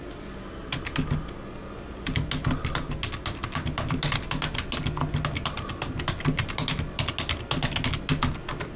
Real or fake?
real